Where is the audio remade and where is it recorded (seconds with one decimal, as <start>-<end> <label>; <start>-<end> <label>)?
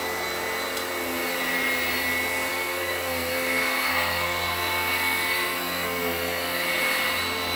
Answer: 0.0-2.5 recorded; 2.5-6.7 remade; 6.7-7.6 recorded